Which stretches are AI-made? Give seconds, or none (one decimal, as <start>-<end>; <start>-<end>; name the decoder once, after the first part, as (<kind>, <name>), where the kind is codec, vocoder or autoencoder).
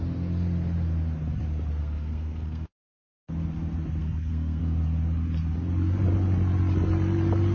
1.8-3.2 (codec, SNAC); 4.0-4.6